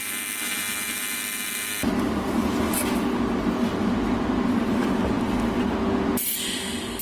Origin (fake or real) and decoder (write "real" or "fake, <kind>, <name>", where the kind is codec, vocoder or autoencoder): real